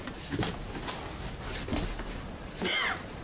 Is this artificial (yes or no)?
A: no